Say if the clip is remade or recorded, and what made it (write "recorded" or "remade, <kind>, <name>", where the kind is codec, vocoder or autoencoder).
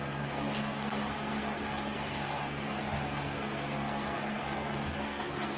remade, codec, SNAC